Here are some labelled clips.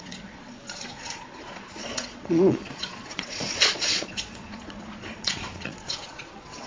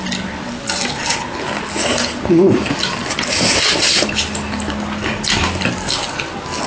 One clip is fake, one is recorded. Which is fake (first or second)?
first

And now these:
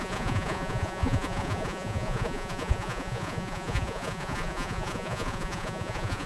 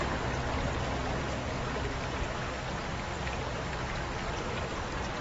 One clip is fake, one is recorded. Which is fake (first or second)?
first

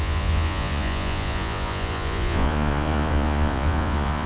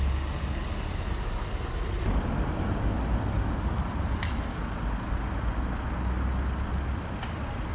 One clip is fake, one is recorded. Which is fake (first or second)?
first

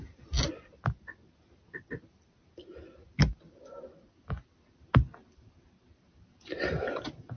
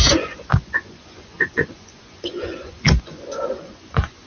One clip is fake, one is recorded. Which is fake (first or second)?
second